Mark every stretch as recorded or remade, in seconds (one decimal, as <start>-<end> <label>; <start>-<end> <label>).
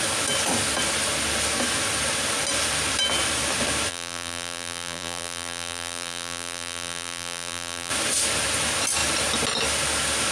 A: 0.0-3.9 recorded; 3.9-7.9 remade; 7.9-10.3 recorded